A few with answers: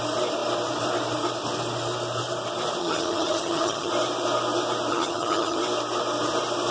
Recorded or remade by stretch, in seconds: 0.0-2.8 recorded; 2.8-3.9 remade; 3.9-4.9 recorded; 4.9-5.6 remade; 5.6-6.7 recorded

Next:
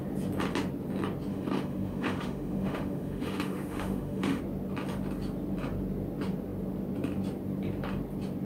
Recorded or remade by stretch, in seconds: 0.0-1.3 recorded; 1.3-4.4 remade; 4.4-8.4 recorded

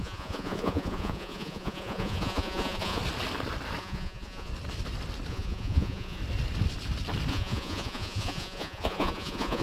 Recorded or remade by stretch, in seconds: 0.0-3.0 remade; 3.0-3.8 recorded; 3.8-4.5 remade; 4.5-5.3 recorded; 5.3-6.2 remade; 6.2-7.3 recorded; 7.3-9.6 remade